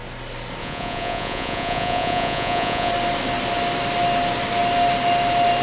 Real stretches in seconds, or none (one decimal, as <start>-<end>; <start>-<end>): 0.0-0.6; 2.9-5.6